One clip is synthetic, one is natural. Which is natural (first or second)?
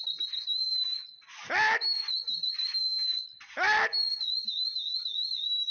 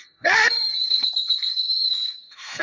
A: first